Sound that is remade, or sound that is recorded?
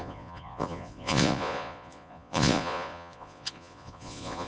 remade